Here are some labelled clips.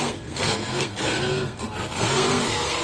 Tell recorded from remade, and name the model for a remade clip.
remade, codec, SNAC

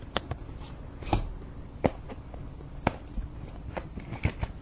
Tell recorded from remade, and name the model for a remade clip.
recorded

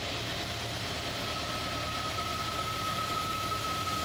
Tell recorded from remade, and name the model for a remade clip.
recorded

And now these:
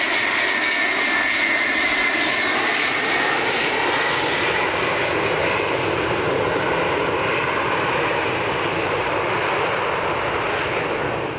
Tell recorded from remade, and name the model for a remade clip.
recorded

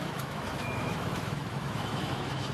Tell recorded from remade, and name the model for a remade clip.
remade, autoencoder, DAC-VAE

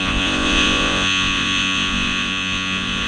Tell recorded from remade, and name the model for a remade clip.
remade, vocoder, Vocos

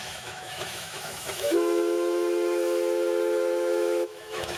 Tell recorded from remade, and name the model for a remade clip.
remade, autoencoder, DAC-VAE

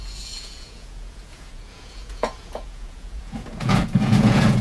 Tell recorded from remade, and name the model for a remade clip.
remade, vocoder, Vocos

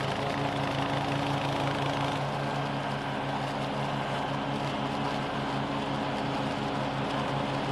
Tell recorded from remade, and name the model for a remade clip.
recorded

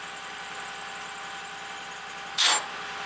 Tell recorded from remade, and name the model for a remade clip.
recorded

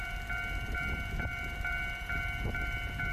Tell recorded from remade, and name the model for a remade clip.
remade, vocoder, BigVGAN v2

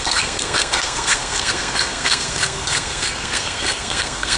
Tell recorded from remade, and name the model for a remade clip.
remade, codec, SNAC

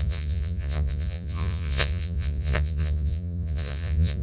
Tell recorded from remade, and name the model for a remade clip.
remade, vocoder, Vocos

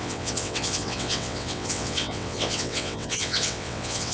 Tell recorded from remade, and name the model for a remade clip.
remade, vocoder, WaveNeXt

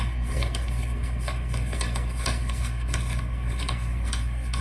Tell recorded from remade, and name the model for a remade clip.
remade, codec, SNAC